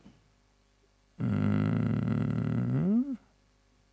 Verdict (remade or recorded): recorded